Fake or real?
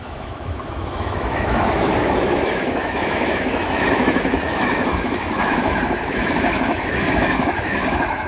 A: fake